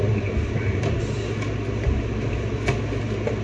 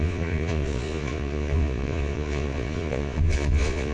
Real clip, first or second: first